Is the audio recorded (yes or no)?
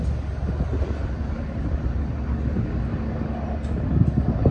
yes